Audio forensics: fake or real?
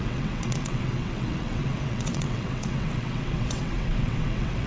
fake